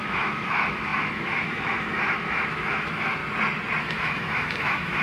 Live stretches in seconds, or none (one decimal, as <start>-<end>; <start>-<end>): 3.2-3.8